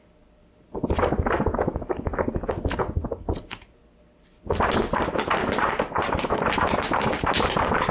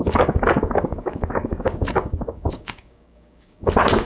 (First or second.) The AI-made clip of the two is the second